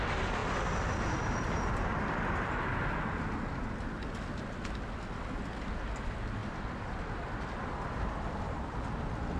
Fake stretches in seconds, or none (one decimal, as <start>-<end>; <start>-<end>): 0.4-0.9; 6.4-8.8